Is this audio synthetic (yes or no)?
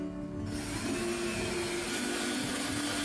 no